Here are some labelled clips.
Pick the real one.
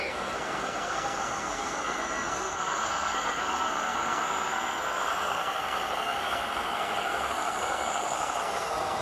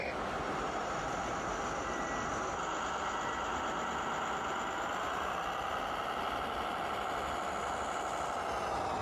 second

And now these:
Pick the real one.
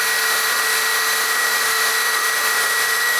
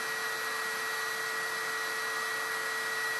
second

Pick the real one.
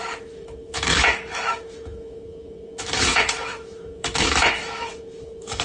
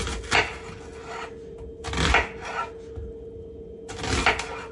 second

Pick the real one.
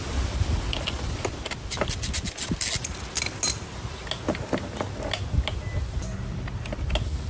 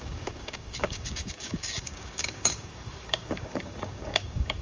first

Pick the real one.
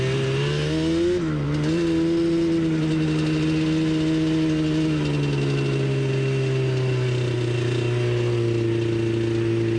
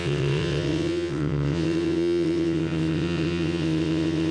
first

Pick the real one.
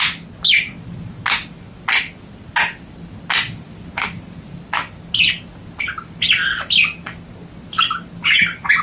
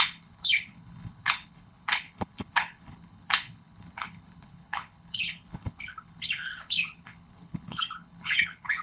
first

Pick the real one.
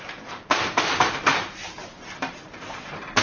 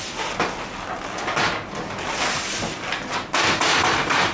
second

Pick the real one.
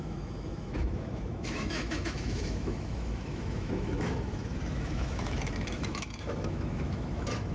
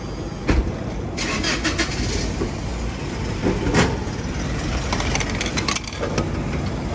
second